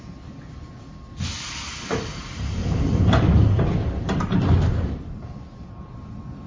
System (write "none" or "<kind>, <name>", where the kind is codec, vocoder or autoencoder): none